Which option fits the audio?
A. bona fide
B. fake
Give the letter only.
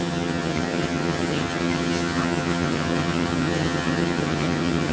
B